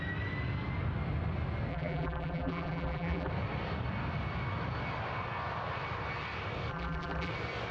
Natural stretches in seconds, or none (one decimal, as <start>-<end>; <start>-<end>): 0.0-1.7; 3.3-6.7; 7.3-7.7